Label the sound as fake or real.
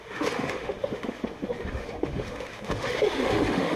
fake